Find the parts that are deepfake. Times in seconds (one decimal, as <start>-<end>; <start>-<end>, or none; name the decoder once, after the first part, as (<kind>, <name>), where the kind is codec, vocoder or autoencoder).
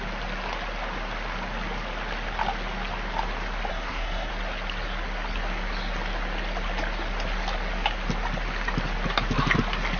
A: 3.7-4.3 (codec, SNAC)